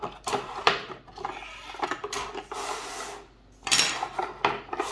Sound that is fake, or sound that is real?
real